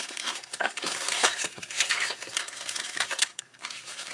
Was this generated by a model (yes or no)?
yes